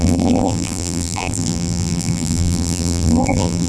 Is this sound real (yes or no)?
no